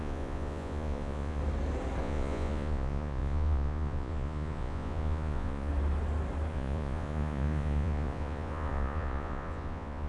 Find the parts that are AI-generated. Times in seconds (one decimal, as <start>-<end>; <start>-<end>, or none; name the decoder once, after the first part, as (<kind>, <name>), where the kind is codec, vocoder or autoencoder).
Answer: 0.0-1.4 (vocoder, Vocos); 2.0-5.7; 6.5-10.1